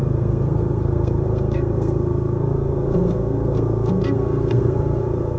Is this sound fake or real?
fake